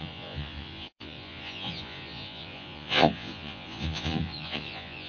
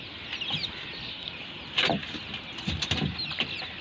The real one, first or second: second